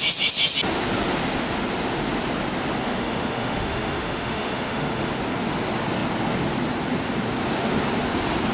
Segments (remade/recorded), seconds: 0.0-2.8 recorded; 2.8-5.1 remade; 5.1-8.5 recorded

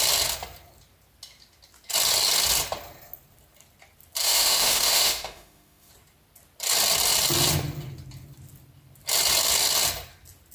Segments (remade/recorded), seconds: 0.0-4.2 recorded; 4.2-5.9 remade; 5.9-10.5 recorded

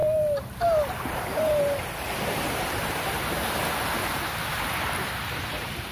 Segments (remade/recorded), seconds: 0.0-5.9 remade